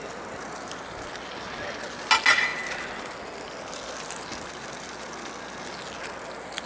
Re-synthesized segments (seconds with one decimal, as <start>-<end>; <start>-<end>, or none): none